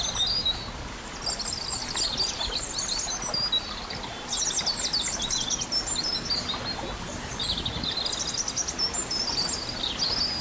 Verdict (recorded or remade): recorded